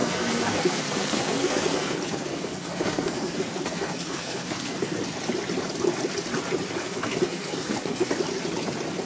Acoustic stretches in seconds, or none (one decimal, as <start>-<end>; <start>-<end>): 5.0-6.8; 8.1-9.1